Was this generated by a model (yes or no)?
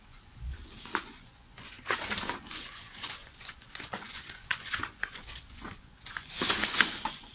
yes